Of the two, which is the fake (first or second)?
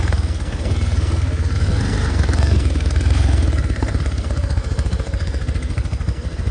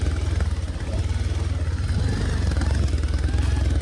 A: first